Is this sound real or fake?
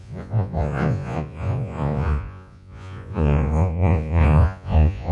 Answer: fake